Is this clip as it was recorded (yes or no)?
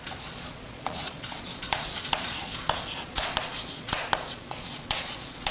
no